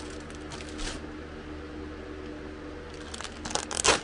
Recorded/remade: recorded